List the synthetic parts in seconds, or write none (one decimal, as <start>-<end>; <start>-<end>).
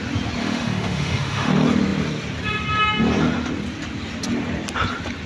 0.4-1.5